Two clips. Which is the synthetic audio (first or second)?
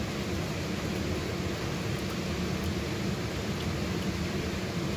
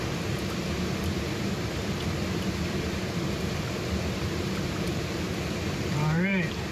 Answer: second